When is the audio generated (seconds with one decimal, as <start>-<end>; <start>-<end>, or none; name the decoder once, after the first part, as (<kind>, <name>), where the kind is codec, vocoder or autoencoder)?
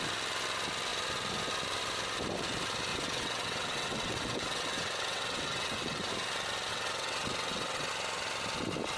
2.9-6.1 (vocoder, WaveNeXt); 6.7-7.9